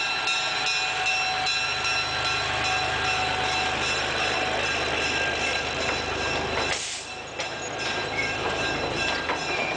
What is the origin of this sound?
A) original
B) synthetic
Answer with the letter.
A